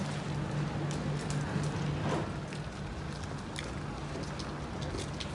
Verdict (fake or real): real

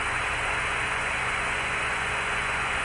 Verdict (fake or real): fake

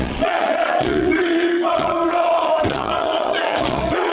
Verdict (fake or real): fake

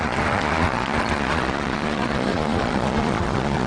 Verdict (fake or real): fake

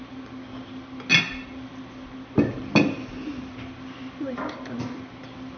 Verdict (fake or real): real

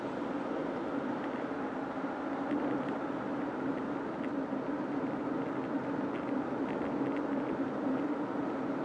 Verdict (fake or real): real